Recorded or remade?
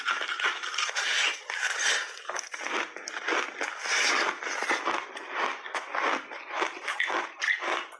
recorded